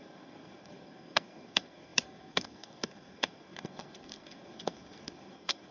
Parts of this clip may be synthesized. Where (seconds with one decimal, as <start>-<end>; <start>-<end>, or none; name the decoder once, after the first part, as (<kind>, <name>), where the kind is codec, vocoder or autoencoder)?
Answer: 0.0-5.7 (codec, SNAC)